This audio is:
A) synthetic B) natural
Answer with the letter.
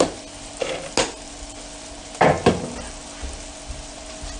B